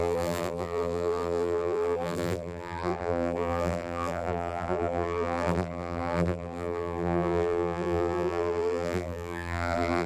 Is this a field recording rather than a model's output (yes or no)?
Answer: no